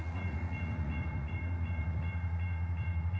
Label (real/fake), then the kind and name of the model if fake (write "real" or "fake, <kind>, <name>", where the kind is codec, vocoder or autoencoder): fake, vocoder, Vocos